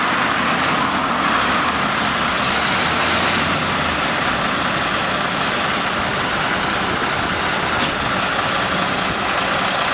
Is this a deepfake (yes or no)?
no